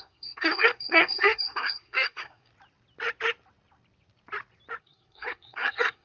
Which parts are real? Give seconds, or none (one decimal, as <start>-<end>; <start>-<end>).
2.5-4.8